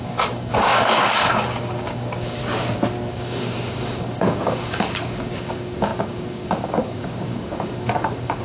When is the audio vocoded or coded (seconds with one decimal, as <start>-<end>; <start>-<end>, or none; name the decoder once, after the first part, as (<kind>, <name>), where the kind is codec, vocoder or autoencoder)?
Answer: 0.0-2.4 (codec, DAC); 3.1-8.4